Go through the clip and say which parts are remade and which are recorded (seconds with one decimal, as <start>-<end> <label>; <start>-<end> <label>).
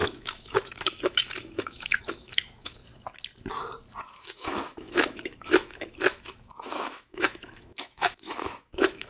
0.0-2.8 remade; 2.8-4.0 recorded; 4.0-9.1 remade